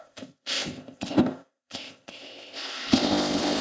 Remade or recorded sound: remade